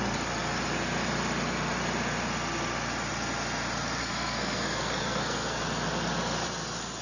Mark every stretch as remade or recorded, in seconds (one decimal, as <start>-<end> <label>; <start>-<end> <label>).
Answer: 0.0-4.0 recorded; 4.0-5.6 remade; 5.6-7.0 recorded